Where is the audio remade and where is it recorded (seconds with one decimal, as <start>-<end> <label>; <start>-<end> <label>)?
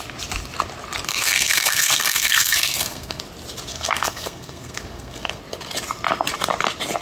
0.0-1.1 recorded; 1.1-3.2 remade; 3.2-3.7 recorded; 3.7-5.4 remade; 5.4-7.0 recorded